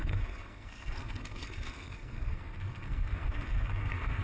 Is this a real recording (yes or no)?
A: no